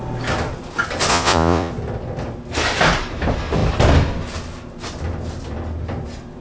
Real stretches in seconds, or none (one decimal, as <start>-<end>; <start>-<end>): 0.0-1.1; 1.7-6.4

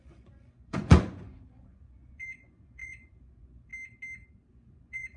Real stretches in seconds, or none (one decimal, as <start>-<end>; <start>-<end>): 3.7-4.5

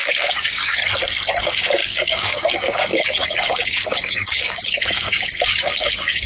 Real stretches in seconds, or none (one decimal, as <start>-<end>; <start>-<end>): 0.8-1.4

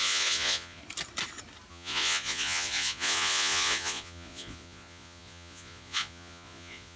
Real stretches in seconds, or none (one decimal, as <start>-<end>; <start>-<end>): 0.8-1.7